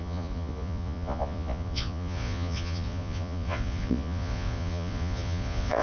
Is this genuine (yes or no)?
no